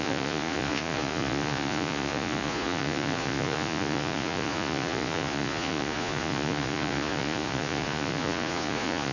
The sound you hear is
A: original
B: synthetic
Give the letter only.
B